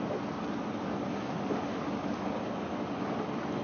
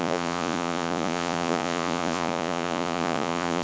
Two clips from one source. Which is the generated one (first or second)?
second